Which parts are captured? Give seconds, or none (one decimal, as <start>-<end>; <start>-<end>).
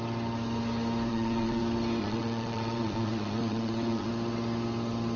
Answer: 0.0-1.1; 1.6-2.0; 4.1-5.2